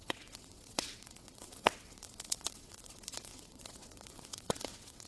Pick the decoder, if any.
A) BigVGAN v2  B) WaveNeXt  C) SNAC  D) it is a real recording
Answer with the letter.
B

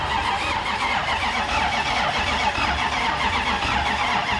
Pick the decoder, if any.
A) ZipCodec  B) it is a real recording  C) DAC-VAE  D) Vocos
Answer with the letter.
B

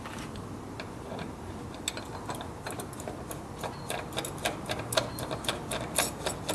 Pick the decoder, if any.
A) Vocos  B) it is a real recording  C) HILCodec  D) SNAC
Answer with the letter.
B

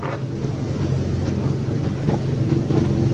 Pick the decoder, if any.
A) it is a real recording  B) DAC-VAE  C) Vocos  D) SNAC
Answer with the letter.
A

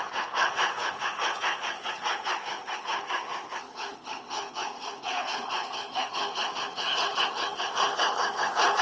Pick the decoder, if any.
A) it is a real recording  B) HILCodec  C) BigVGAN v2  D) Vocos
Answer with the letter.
B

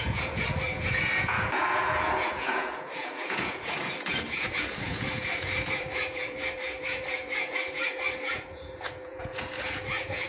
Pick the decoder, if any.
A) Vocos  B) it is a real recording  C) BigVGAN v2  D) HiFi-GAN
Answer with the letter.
A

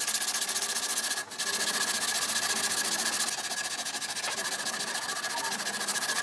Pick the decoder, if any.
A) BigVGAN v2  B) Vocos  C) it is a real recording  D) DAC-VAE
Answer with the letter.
C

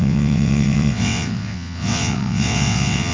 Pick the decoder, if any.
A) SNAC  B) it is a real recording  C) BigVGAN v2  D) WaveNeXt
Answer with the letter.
D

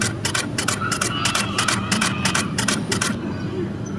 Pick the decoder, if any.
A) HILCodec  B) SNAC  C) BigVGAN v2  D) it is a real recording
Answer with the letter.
D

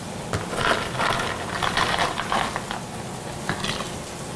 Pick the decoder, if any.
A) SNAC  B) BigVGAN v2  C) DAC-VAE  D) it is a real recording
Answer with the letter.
D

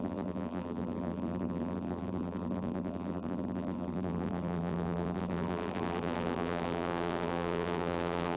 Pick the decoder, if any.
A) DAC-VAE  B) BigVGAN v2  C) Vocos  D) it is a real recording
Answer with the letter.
B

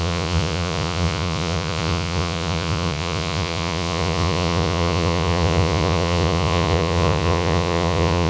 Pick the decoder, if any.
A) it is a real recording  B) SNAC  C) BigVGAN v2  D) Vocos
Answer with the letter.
D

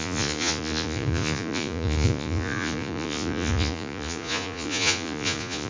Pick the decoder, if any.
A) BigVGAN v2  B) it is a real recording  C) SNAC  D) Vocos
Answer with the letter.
D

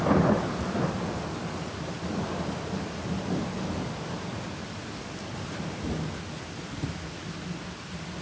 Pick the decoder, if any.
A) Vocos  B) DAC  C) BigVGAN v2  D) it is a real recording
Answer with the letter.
D